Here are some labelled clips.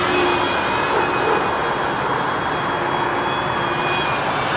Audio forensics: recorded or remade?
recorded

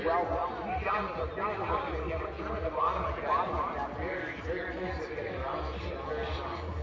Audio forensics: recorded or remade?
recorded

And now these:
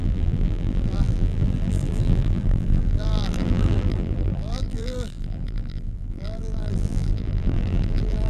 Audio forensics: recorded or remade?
remade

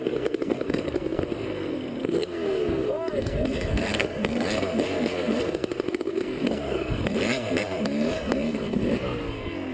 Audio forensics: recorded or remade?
remade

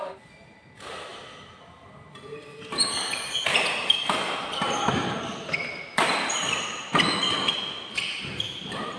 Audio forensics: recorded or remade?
recorded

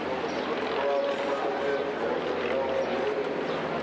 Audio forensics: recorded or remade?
recorded